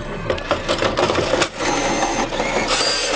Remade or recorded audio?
recorded